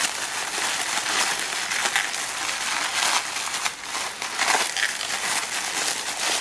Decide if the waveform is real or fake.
real